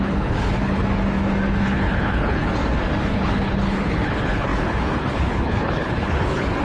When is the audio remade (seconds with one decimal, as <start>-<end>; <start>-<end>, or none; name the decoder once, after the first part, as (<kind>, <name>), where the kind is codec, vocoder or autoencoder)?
0.0-0.8 (codec, HILCodec); 1.6-2.6; 3.1-6.6